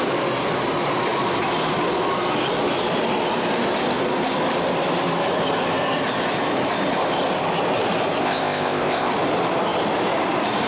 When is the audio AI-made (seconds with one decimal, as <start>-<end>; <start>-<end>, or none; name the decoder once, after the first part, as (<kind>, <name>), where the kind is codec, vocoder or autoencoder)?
8.2-9.1 (codec, ZipCodec)